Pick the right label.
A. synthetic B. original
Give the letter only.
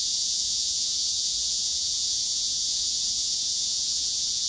A